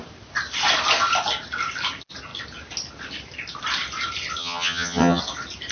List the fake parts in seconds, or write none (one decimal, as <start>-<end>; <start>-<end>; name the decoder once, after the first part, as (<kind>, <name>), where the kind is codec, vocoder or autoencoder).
4.4-5.2 (vocoder, HiFi-GAN)